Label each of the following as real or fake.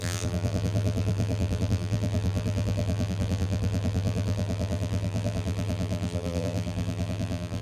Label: fake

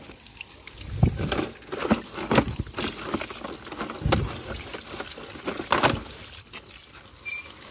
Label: real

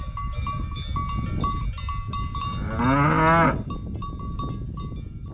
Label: real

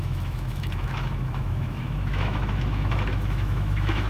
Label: fake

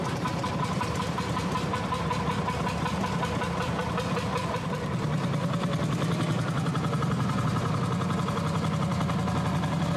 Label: real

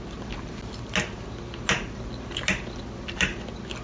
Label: real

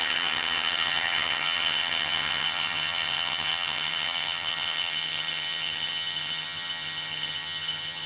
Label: fake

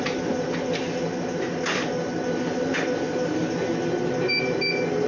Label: real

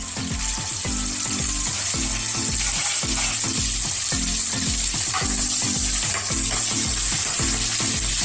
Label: real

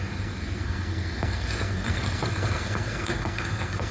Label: fake